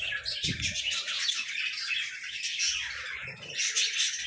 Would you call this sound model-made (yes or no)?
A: no